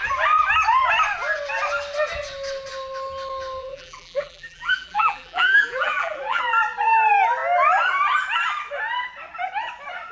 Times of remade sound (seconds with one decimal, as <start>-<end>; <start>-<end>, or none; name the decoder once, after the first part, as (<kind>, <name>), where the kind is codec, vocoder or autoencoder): 3.6-6.4 (vocoder, BigVGAN v2)